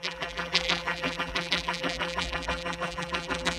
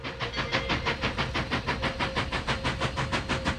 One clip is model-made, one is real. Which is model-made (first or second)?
first